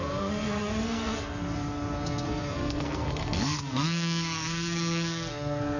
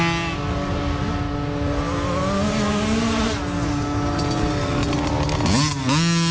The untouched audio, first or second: second